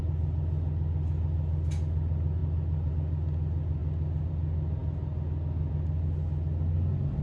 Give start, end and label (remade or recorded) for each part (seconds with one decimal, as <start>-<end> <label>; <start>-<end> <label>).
0.0-7.2 recorded